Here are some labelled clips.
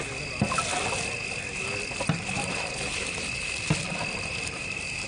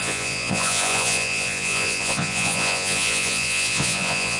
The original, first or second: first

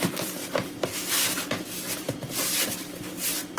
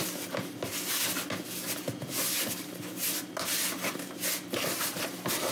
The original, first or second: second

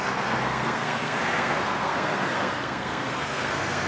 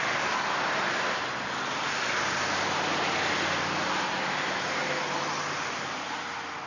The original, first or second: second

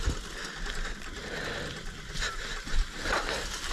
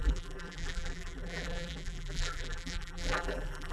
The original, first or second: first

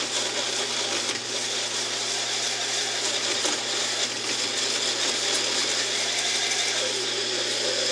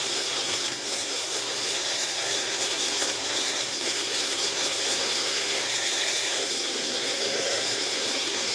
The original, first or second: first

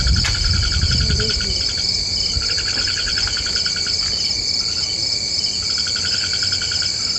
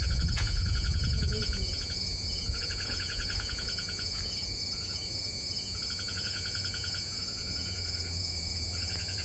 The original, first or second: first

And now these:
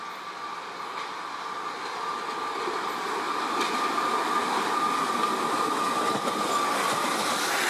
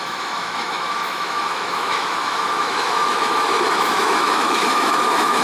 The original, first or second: first